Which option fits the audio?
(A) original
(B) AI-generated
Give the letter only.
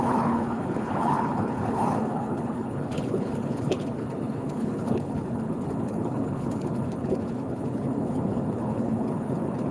B